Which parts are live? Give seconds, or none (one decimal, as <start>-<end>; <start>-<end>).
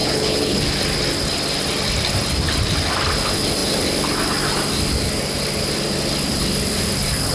0.6-7.3